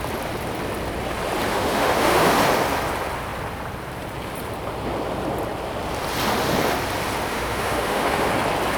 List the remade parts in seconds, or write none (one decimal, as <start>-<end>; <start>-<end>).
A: 1.5-2.3; 7.3-8.3